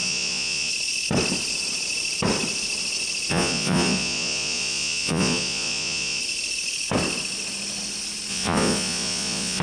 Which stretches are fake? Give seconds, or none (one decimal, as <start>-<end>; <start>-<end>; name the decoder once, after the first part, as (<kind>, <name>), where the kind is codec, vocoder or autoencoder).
0.0-0.7 (vocoder, Vocos); 3.3-6.2; 8.3-9.6